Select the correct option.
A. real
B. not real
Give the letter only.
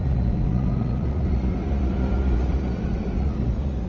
B